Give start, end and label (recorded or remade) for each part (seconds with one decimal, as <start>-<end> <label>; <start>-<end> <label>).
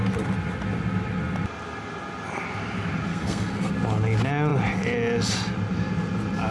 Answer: 0.0-3.1 recorded; 3.1-3.7 remade; 3.7-6.5 recorded